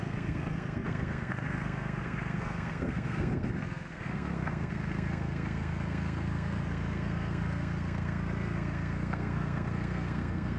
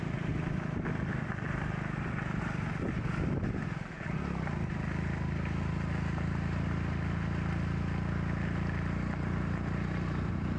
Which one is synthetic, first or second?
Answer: first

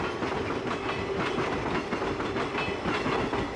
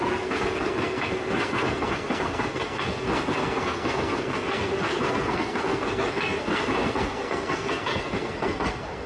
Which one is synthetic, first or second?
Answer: second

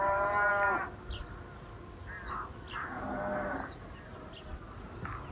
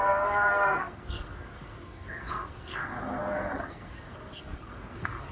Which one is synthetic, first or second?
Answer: second